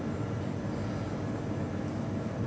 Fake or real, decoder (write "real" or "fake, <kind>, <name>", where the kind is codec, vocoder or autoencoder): real